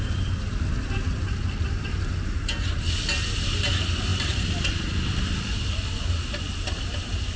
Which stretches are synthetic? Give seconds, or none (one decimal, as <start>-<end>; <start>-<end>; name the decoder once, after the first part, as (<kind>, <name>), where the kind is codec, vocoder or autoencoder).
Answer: none